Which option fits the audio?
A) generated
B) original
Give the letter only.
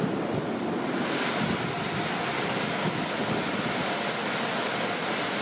B